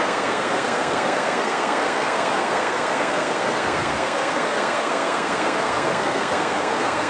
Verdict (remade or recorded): remade